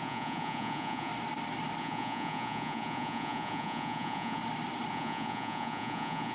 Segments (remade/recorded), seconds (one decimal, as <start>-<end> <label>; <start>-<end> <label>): 0.0-1.1 remade; 1.1-1.8 recorded; 1.8-4.4 remade; 4.4-4.9 recorded; 4.9-6.3 remade